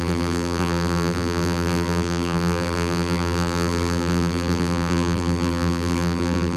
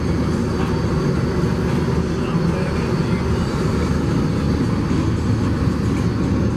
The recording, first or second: second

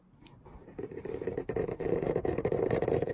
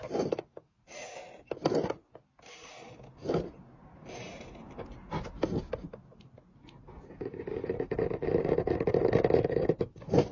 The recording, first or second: second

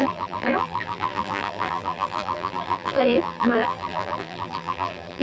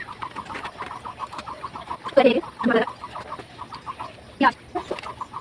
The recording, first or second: second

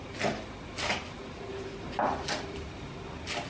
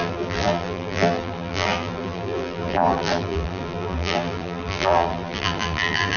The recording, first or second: first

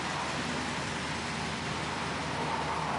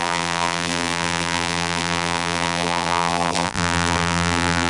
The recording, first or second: first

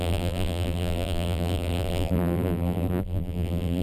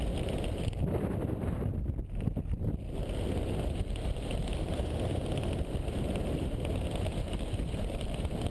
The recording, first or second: second